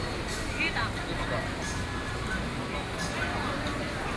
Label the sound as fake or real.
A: real